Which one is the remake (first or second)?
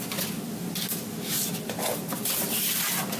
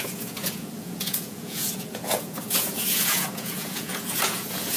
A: second